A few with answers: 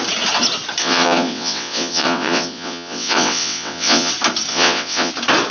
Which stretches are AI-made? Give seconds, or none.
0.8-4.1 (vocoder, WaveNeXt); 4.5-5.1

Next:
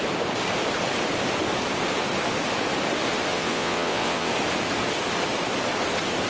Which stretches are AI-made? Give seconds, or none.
3.3-4.3 (vocoder, WaveNeXt)

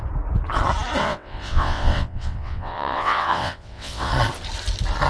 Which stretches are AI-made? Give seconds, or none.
1.0-4.1 (vocoder, WaveNeXt)

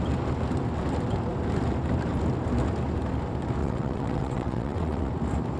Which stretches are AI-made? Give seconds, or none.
3.6-5.1 (vocoder, WaveNeXt)

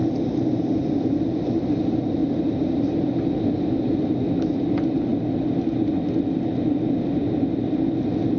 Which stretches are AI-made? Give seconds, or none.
none